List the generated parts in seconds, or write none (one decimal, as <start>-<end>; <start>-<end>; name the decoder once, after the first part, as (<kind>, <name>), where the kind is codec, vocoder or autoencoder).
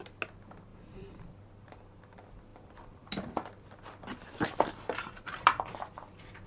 0.7-1.3 (vocoder, BigVGAN v2); 2.5-6.5